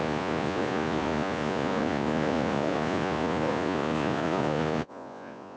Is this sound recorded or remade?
remade